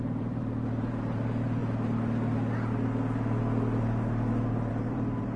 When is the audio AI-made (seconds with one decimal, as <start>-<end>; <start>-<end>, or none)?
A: 0.0-1.6; 4.7-5.4